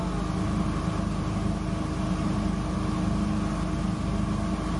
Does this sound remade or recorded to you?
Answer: recorded